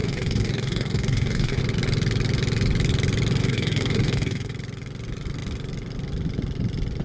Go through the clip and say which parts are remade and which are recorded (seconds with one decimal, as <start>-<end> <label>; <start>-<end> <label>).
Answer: 0.0-1.6 remade; 1.6-3.4 recorded; 3.4-4.5 remade; 4.5-7.0 recorded